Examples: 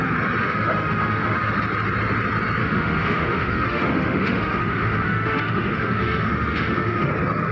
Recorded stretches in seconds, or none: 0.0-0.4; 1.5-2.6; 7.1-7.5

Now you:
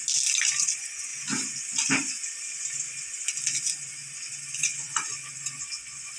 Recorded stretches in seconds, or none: 0.0-0.6; 1.1-4.6

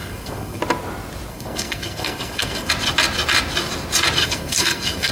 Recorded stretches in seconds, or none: 0.6-1.3; 2.7-4.2

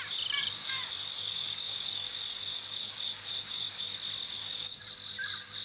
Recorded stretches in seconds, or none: 0.0-0.4; 3.8-4.2; 4.8-5.6